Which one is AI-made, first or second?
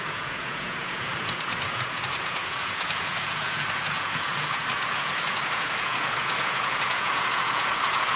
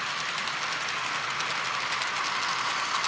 first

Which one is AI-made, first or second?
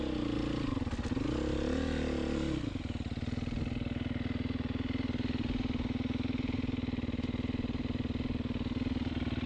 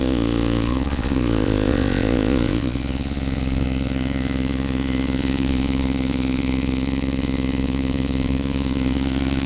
second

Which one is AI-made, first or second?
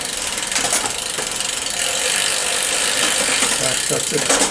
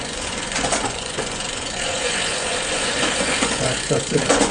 second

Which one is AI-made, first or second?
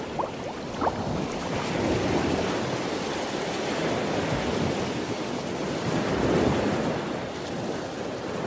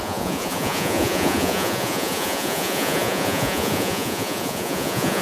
second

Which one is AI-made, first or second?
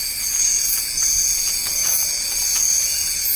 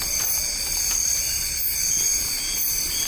first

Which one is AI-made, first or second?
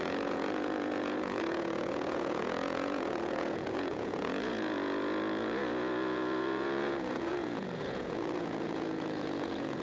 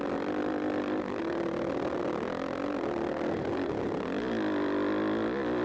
first